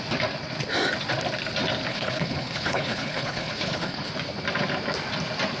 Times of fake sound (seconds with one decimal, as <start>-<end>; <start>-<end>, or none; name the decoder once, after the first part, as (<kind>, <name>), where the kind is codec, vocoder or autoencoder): 1.9-4.1 (codec, HILCodec)